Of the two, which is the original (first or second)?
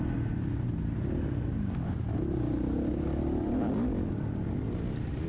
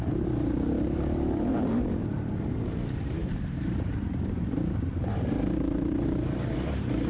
first